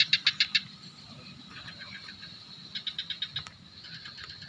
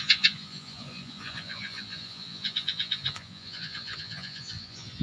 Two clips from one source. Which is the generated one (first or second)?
second